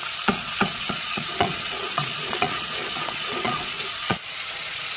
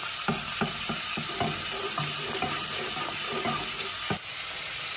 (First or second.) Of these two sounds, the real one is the second